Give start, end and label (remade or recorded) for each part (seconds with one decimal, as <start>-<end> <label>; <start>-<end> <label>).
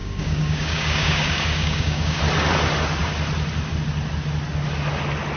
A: 0.0-2.2 remade; 2.2-5.4 recorded